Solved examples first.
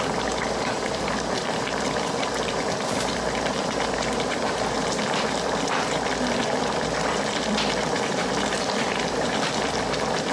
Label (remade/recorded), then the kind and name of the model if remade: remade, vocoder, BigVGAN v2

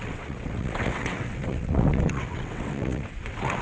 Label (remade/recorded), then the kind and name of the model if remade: remade, vocoder, WaveNeXt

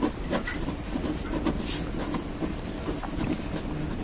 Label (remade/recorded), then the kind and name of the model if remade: remade, vocoder, BigVGAN v2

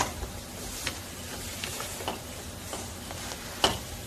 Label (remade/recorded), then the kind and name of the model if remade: recorded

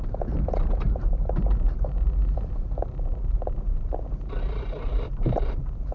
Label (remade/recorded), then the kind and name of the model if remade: remade, vocoder, BigVGAN v2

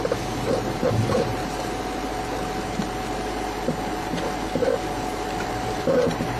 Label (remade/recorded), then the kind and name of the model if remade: remade, vocoder, BigVGAN v2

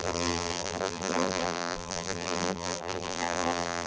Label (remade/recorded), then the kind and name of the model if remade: remade, vocoder, BigVGAN v2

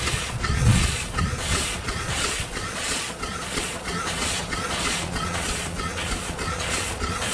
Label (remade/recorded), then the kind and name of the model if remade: remade, vocoder, Vocos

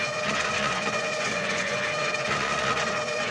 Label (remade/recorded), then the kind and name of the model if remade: remade, vocoder, Vocos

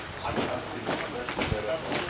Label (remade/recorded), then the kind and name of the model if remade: recorded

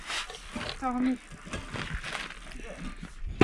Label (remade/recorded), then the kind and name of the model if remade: recorded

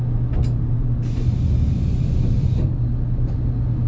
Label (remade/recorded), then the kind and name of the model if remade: recorded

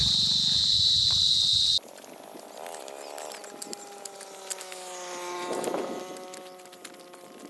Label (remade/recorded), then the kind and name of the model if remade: recorded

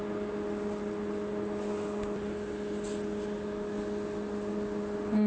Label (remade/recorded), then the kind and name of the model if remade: recorded